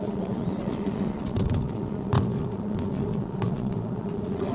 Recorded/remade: remade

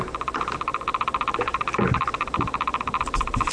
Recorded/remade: recorded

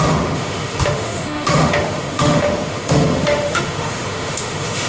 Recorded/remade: remade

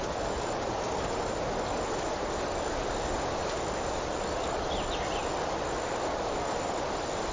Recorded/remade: recorded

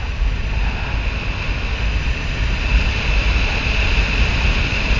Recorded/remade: recorded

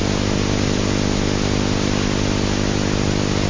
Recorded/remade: recorded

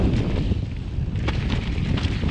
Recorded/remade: recorded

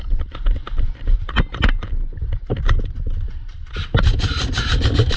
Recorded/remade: remade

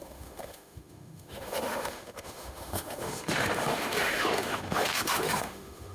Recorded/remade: remade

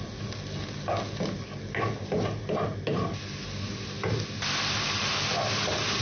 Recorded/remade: recorded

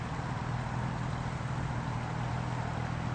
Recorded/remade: recorded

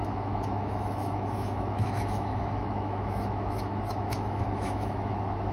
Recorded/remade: remade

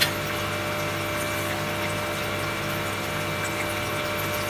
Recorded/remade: recorded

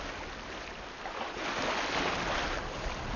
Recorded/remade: recorded